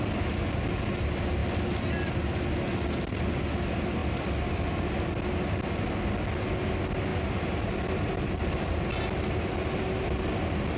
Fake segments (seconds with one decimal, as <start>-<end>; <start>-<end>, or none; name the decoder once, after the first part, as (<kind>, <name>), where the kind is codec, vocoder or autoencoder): none